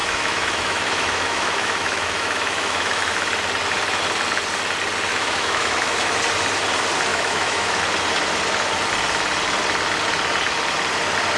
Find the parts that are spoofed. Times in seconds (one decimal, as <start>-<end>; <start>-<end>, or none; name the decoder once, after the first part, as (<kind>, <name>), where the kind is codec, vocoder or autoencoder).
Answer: 0.0-3.1 (autoencoder, DAC-VAE); 5.1-6.2; 7.1-7.8